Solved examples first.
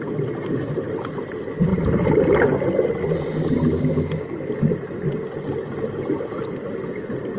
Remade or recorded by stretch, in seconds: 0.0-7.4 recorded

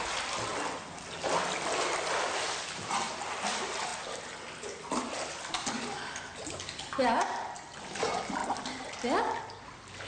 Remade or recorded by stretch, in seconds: 0.0-10.1 recorded

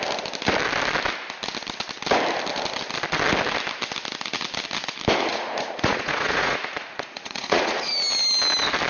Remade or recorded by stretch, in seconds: 0.0-5.3 recorded; 5.3-7.9 remade; 7.9-8.9 recorded